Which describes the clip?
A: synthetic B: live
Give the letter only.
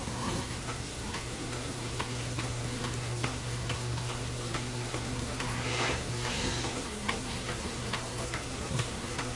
A